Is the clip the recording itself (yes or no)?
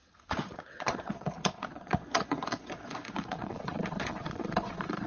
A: no